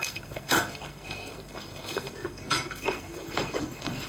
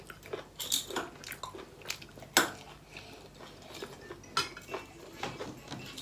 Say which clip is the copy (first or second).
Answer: first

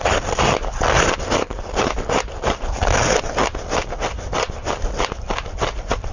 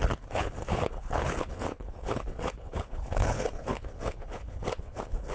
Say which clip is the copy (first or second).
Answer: second